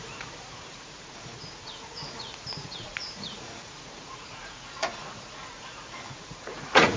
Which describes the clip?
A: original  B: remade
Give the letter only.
B